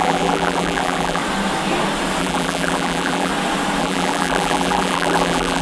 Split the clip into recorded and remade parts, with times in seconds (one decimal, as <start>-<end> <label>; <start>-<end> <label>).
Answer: 0.0-1.2 remade; 1.2-2.2 recorded; 2.2-3.3 remade; 3.3-3.8 recorded; 3.8-5.6 remade